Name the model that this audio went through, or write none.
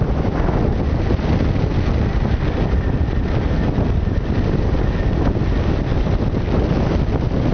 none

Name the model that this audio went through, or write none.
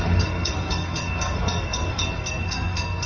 codec, SNAC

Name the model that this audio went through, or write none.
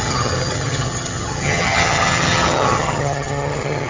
vocoder, HiFi-GAN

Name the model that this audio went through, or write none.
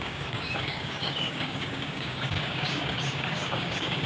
codec, DAC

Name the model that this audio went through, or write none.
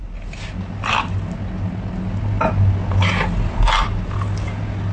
none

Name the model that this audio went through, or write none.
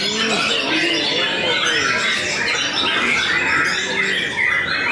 none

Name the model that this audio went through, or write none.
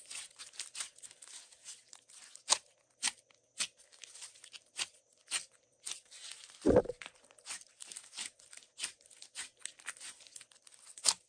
none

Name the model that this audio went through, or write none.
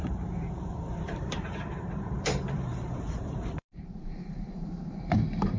vocoder, BigVGAN v2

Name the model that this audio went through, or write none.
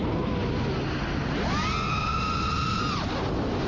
none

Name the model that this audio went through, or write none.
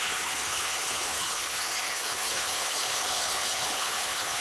codec, HILCodec